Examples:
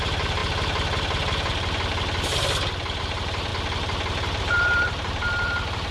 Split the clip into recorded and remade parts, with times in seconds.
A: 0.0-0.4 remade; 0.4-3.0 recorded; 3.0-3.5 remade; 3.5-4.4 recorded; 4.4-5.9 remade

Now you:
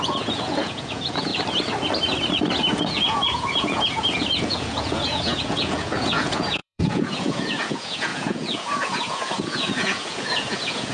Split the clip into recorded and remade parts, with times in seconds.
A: 0.0-1.3 remade; 1.3-2.8 recorded; 2.8-10.9 remade

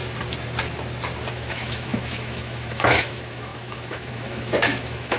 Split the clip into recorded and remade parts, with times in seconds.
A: 0.0-1.3 recorded; 1.3-5.2 remade

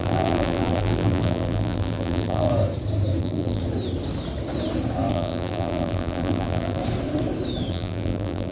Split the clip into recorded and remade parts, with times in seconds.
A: 0.0-2.5 remade; 2.5-3.2 recorded; 3.2-3.6 remade; 3.6-5.1 recorded; 5.1-6.8 remade; 6.8-7.7 recorded; 7.7-8.5 remade